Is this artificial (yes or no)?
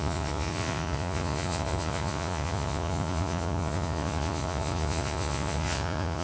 yes